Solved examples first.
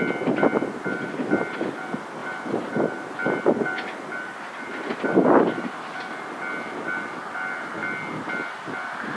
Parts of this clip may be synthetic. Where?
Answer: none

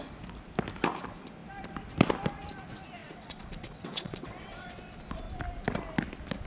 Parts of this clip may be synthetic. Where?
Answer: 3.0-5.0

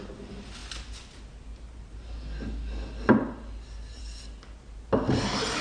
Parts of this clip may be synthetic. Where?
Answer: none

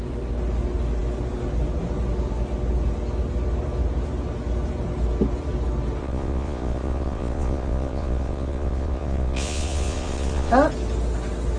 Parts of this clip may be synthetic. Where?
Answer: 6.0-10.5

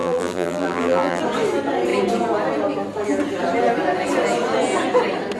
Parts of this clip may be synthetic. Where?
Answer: 0.0-1.2